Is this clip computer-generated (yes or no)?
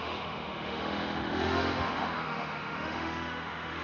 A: yes